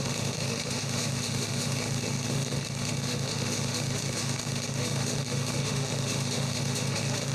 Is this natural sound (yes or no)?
no